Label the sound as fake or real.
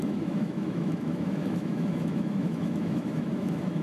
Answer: fake